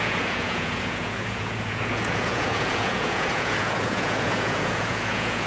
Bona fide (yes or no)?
no